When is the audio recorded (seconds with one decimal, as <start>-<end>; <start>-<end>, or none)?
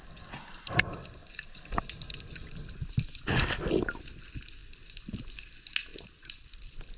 0.0-1.2; 2.0-2.4; 3.3-5.9